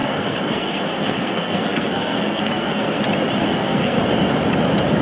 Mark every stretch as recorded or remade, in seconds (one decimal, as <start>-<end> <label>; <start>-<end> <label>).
0.0-3.0 remade; 3.0-3.4 recorded; 3.4-4.0 remade; 4.0-5.0 recorded